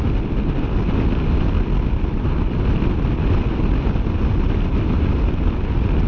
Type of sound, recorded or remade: recorded